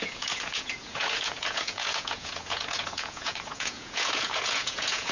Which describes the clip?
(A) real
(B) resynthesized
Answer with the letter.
B